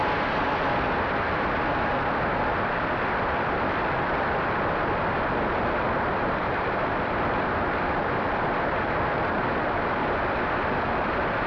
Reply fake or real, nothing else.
fake